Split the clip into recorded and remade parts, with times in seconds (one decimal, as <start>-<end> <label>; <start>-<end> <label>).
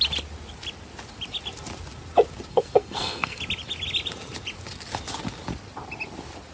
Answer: 0.0-2.5 recorded; 2.5-3.4 remade; 3.4-6.5 recorded